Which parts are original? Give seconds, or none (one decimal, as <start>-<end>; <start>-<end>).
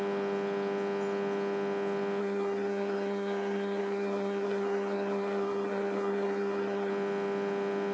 0.0-2.2; 6.9-7.9